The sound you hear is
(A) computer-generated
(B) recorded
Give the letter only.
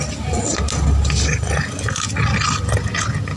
B